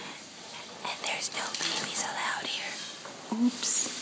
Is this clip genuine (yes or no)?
yes